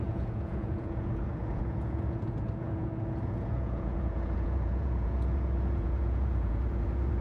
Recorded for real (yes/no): no